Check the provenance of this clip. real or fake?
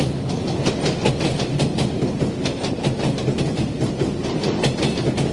real